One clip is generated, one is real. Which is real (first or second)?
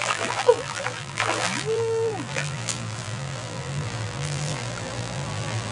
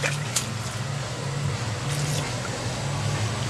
second